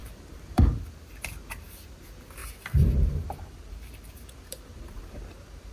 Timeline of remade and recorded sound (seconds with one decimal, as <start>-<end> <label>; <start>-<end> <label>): 0.0-0.6 remade; 0.6-2.4 recorded; 2.4-5.2 remade; 5.2-5.7 recorded